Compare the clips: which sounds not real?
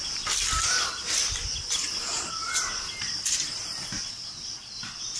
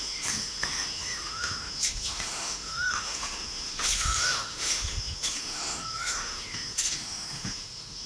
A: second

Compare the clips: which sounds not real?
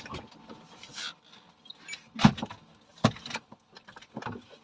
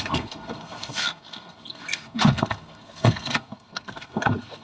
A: second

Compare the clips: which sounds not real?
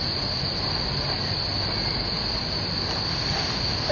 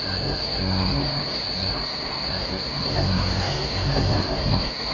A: second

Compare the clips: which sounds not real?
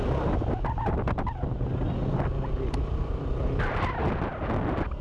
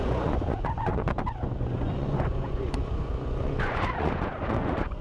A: second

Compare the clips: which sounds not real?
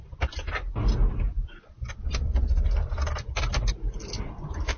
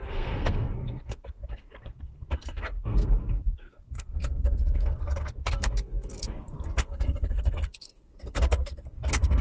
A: second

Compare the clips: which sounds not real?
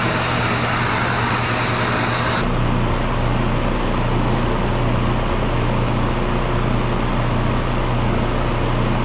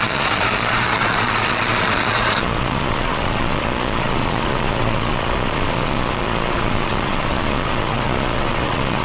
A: second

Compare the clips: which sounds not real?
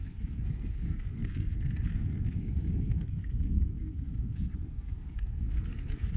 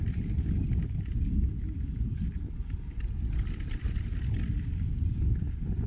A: first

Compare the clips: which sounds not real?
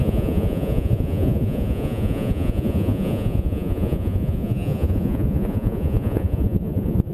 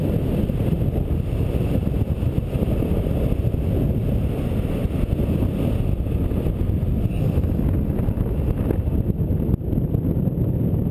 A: first